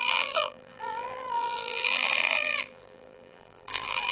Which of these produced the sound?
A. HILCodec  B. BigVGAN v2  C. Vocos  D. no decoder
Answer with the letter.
B